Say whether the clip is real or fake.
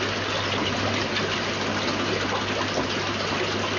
real